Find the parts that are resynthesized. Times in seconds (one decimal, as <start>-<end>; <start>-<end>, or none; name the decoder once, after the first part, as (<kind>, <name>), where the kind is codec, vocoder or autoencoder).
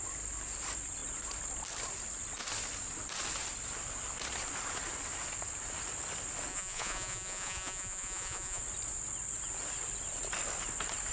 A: 6.5-8.6 (vocoder, Vocos)